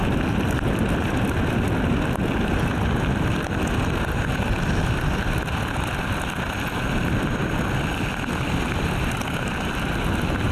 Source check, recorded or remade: recorded